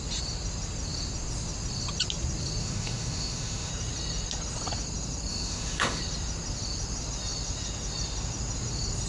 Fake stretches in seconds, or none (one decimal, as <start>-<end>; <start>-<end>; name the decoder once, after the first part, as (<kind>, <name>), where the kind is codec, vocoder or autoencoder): 2.6-3.7 (autoencoder, DAC-VAE); 5.3-6.0

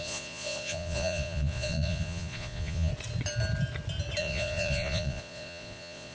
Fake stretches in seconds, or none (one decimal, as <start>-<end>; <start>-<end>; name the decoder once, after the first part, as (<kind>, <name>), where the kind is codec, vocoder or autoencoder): 0.0-2.9 (vocoder, Vocos); 4.2-6.1

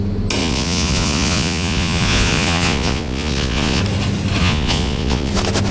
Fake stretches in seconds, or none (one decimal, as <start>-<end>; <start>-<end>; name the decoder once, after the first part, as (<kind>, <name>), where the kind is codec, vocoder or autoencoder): 0.4-3.8 (vocoder, Vocos); 4.4-5.3

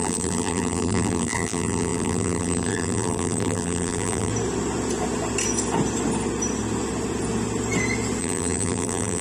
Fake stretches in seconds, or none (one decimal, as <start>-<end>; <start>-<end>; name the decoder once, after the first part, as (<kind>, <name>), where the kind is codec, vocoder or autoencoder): 0.0-4.3 (vocoder, BigVGAN v2); 8.2-9.2

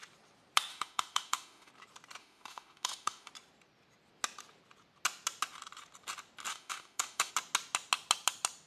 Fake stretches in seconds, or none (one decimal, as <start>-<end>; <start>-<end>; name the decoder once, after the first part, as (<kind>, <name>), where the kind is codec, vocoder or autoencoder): 0.7-1.7 (autoencoder, DAC-VAE); 2.2-3.3; 6.5-7.3

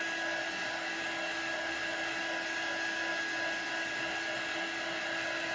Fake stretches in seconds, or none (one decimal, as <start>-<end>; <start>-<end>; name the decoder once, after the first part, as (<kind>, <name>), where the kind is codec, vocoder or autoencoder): none